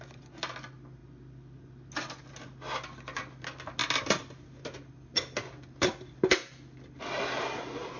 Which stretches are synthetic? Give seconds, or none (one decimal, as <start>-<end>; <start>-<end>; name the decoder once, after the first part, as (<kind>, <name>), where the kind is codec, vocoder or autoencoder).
none